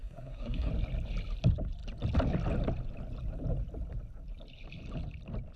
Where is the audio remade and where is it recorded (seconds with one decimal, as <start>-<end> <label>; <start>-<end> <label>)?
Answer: 0.0-0.7 remade; 0.7-5.6 recorded